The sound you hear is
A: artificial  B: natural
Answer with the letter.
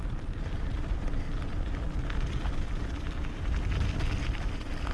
B